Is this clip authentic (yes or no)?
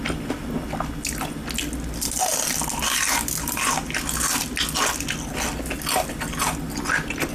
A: yes